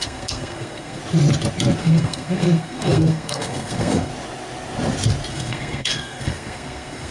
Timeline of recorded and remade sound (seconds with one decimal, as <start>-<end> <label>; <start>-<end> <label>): 0.0-1.0 remade; 1.0-1.8 recorded; 1.8-4.1 remade; 4.1-5.3 recorded; 5.3-7.1 remade